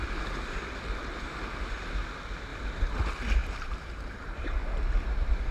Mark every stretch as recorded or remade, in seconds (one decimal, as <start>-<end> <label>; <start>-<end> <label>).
0.0-3.4 recorded; 3.4-5.5 remade